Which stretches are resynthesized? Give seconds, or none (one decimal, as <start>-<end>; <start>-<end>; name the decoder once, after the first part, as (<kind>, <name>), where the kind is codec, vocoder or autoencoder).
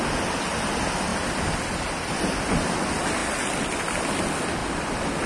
1.1-2.3 (vocoder, BigVGAN v2); 3.2-4.1